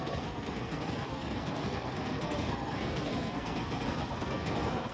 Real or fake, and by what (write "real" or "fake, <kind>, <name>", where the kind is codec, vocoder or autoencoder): fake, codec, SNAC